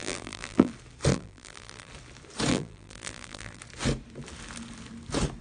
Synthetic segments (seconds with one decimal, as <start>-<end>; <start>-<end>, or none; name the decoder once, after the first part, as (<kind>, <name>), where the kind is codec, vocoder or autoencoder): 0.0-0.7 (vocoder, BigVGAN v2); 1.1-1.9; 2.5-3.6